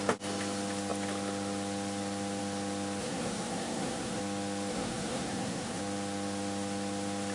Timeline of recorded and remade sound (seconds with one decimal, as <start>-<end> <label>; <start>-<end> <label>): 0.0-3.0 recorded; 3.0-4.2 remade; 4.2-4.7 recorded; 4.7-5.8 remade; 5.8-7.3 recorded